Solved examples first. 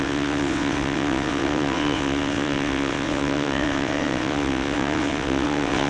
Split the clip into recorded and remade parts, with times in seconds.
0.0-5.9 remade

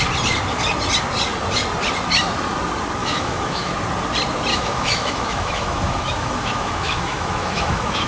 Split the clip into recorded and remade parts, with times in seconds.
0.0-3.0 recorded; 3.0-3.7 remade; 3.7-4.5 recorded; 4.5-8.1 remade

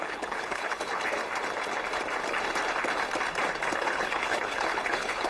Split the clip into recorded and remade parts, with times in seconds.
0.0-1.2 remade; 1.2-3.7 recorded; 3.7-5.3 remade

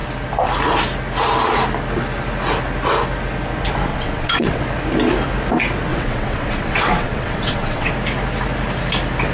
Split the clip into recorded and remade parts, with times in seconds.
0.0-3.9 recorded; 3.9-4.6 remade; 4.6-5.9 recorded; 5.9-7.9 remade; 7.9-9.3 recorded

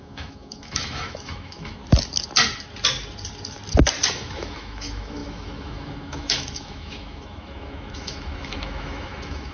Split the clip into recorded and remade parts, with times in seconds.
0.0-1.8 remade; 1.8-4.1 recorded; 4.1-9.5 remade